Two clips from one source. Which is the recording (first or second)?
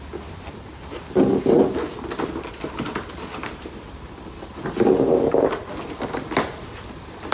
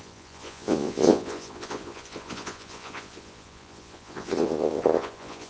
first